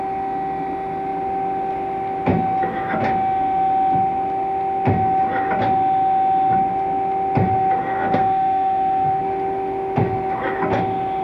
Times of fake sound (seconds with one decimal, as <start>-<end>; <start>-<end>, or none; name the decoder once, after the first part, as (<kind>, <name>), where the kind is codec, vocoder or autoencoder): 7.8-9.2 (codec, SNAC)

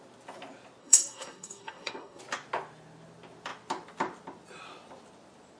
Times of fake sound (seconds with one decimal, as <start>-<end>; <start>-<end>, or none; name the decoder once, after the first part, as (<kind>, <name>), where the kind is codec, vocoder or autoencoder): 0.8-2.2 (codec, SNAC)

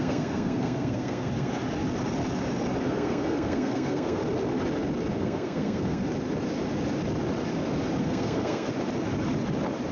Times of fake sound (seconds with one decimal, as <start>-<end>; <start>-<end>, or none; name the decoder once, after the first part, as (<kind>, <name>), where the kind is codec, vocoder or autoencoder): 0.0-1.6 (codec, SNAC); 2.8-4.2; 5.1-6.0; 8.0-8.7

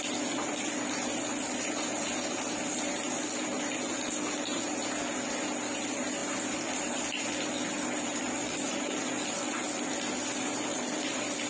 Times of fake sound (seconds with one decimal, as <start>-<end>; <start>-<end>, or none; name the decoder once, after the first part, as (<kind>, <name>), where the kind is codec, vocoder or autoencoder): none

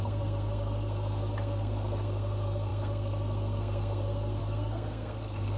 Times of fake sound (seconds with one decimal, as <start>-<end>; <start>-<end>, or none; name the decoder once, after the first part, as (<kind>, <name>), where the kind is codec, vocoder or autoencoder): 0.0-5.6 (codec, SNAC)

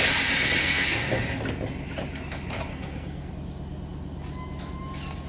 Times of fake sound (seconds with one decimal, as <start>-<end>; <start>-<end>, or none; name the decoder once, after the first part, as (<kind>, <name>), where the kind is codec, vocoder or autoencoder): 0.6-1.1 (codec, SNAC); 2.7-3.3

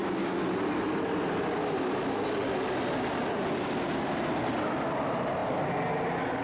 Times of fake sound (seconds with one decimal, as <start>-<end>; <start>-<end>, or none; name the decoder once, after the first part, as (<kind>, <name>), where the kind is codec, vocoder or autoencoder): none

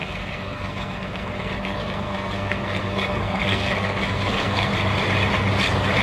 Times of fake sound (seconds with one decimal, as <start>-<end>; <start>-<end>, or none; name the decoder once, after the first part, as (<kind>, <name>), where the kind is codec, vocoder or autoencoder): 0.0-4.7 (codec, SNAC)